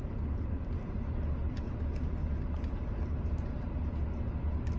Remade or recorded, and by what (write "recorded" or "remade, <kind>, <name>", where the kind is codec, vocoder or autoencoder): recorded